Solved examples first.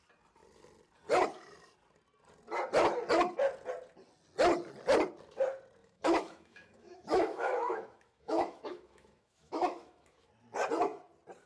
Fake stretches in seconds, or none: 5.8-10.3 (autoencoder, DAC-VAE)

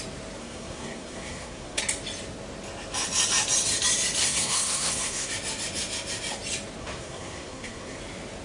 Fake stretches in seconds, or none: 0.4-1.8 (codec, SNAC); 4.2-5.3; 6.8-8.0

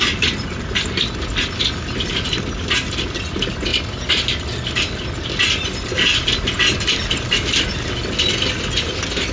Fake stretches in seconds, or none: none